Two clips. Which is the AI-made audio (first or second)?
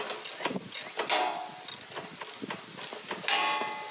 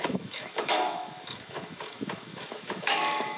second